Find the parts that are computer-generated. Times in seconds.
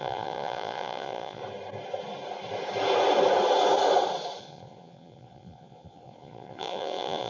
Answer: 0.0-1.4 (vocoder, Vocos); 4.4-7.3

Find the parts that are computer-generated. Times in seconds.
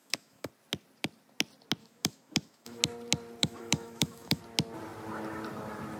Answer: 0.0-0.5 (autoencoder, DAC-VAE); 1.8-2.8; 3.4-4.4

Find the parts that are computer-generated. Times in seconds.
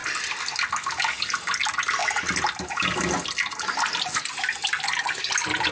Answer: none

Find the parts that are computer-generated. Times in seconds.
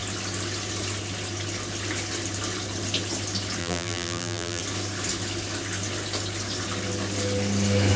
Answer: 3.6-4.6 (vocoder, BigVGAN v2)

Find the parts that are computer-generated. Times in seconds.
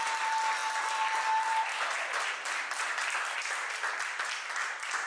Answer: none